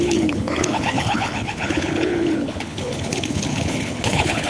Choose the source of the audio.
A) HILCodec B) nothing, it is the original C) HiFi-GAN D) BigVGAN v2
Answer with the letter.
A